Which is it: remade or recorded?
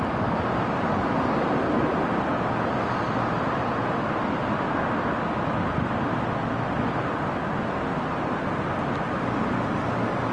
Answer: recorded